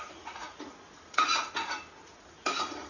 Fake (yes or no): yes